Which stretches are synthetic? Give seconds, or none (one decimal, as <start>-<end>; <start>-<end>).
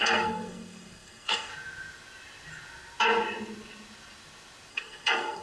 0.0-1.5; 4.7-5.4